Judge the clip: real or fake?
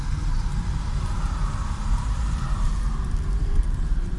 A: fake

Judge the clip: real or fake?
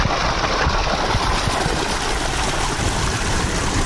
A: real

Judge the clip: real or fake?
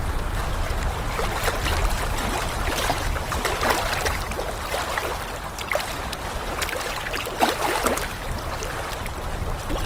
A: real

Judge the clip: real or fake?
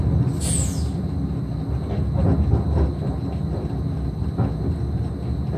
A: real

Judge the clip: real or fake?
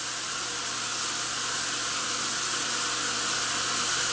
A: real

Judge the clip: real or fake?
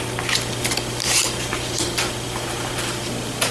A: real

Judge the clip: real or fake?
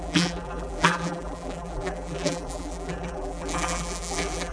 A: fake